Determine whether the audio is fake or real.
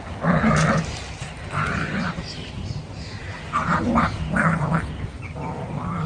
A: real